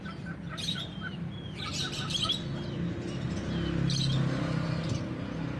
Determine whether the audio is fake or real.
real